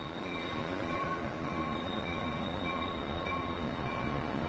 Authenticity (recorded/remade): remade